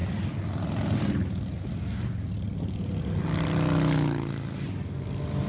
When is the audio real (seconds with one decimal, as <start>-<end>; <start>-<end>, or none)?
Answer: 0.0-5.5